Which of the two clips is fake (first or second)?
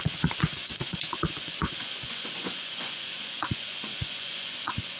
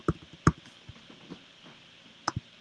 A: first